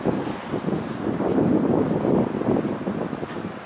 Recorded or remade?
recorded